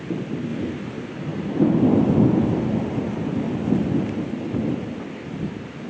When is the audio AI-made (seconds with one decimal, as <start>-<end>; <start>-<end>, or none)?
none